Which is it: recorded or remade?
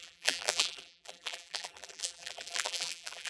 remade